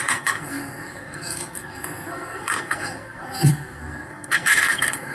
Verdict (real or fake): fake